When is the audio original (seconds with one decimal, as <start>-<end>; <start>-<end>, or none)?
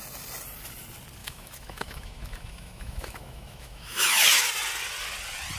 0.0-1.2; 4.5-5.6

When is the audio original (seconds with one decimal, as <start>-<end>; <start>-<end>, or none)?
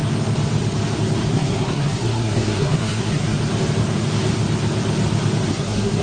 0.0-1.3; 3.4-5.5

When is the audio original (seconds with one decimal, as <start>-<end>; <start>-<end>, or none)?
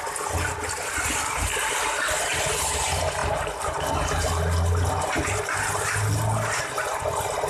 0.0-7.5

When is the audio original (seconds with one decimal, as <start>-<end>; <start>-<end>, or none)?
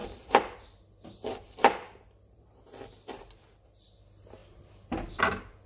none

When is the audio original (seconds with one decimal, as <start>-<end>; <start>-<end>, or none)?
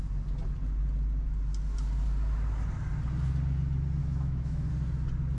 0.0-4.0; 4.7-5.4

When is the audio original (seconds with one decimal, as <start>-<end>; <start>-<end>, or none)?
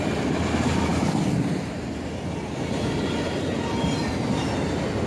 0.0-5.1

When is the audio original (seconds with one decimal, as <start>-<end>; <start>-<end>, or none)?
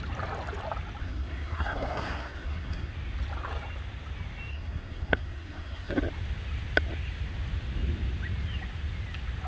0.0-1.0; 2.9-4.5; 5.9-9.5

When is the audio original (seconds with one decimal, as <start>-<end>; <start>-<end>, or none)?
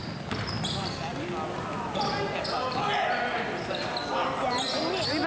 0.0-5.3